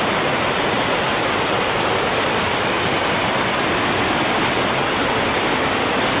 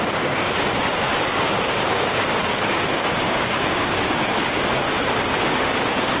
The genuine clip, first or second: first